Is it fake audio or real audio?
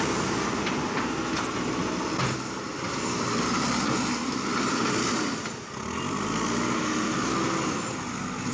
real